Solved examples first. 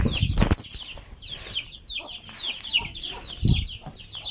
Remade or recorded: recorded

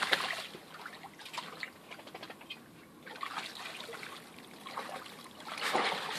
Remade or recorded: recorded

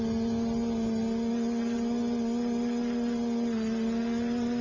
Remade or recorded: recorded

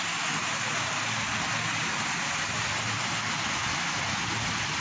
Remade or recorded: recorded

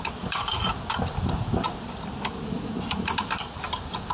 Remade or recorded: recorded